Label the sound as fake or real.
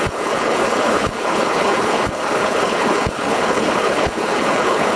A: fake